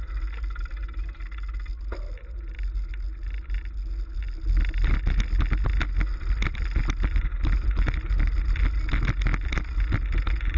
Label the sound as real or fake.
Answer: real